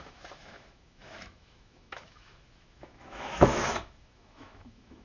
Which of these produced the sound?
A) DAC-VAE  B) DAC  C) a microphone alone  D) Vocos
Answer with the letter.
A